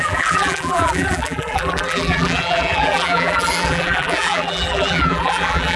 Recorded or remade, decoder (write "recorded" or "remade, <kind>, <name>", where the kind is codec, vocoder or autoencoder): remade, vocoder, BigVGAN v2